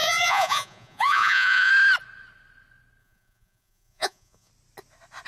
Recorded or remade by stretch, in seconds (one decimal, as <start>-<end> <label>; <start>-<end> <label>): 0.0-1.7 remade; 1.7-3.0 recorded; 3.0-4.5 remade; 4.5-5.3 recorded